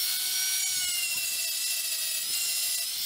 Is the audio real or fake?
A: real